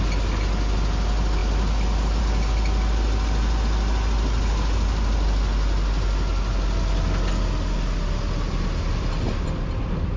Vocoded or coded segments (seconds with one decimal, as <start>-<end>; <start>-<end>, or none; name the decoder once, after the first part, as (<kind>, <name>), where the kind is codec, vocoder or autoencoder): none